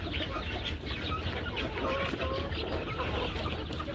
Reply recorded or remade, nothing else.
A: recorded